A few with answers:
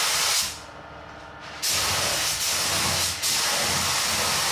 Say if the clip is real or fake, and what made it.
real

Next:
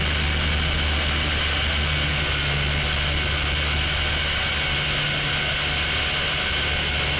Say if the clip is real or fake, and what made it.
real